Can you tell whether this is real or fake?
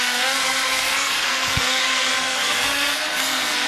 fake